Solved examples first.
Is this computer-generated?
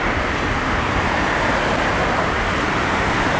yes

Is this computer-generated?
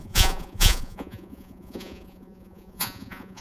yes